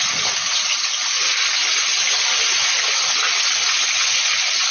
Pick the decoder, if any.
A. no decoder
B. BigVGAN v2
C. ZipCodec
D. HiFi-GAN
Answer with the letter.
A